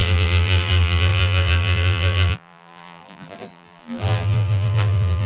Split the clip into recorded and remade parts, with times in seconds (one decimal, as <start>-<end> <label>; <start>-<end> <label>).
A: 0.0-5.3 remade